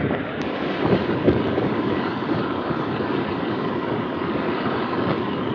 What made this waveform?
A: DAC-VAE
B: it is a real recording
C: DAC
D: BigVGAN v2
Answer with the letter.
C